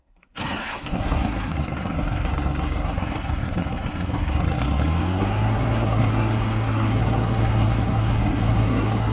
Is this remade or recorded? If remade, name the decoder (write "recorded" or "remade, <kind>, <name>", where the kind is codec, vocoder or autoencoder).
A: remade, codec, SNAC